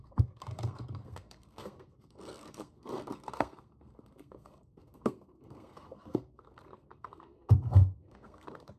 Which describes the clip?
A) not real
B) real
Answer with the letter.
A